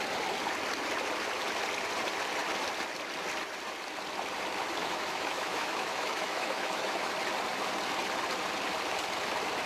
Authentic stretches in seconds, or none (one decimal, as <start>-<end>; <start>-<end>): 0.0-4.8; 7.1-9.7